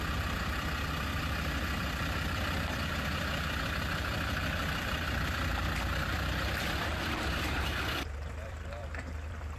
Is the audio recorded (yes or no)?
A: no